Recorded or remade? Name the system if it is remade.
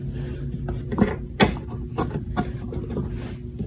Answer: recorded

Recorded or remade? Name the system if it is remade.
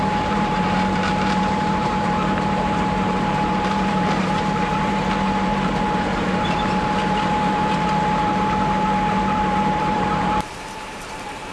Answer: remade, vocoder, BigVGAN v2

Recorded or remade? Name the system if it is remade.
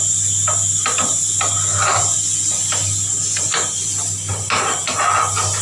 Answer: recorded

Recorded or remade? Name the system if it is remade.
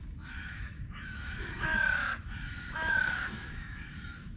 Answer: remade, autoencoder, DAC-VAE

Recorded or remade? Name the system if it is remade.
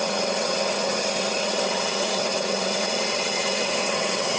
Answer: remade, vocoder, WaveNeXt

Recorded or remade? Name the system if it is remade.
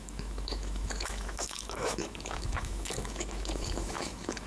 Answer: remade, autoencoder, DAC-VAE